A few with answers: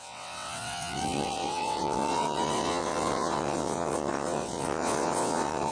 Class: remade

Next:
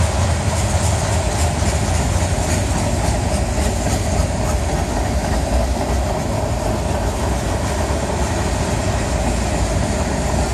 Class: recorded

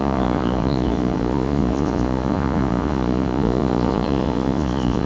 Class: remade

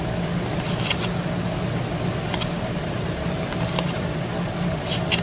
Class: recorded